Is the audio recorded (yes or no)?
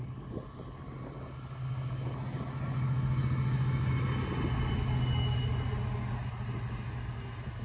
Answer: yes